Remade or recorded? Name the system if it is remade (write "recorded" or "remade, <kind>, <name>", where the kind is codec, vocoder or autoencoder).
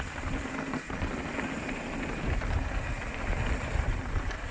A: recorded